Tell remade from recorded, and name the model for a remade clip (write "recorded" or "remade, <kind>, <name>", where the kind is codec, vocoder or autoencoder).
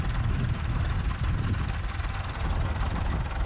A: recorded